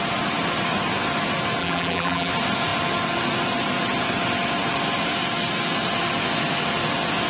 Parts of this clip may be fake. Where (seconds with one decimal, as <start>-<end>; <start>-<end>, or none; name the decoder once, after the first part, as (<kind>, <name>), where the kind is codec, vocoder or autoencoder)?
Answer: 1.6-2.3 (vocoder, BigVGAN v2)